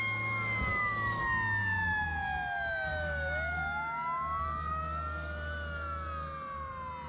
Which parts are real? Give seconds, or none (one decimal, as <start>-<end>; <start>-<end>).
0.0-0.7; 1.2-7.1